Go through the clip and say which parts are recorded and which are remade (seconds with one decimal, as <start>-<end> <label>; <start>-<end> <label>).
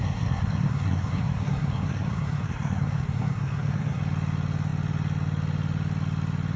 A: 0.0-4.0 remade; 4.0-6.6 recorded